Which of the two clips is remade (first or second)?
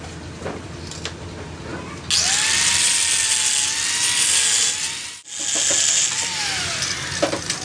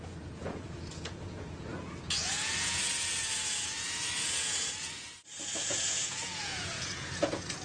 second